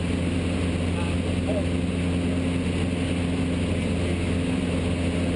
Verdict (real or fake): real